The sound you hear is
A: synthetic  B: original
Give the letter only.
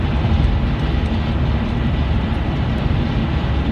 B